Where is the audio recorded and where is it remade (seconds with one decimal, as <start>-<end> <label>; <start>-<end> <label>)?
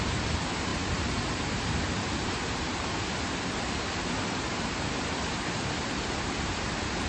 0.0-7.1 remade